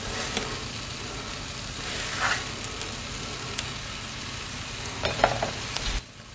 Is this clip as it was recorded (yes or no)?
yes